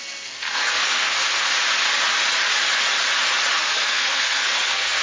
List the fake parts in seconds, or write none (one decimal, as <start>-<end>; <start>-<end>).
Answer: 0.0-1.5; 3.6-5.0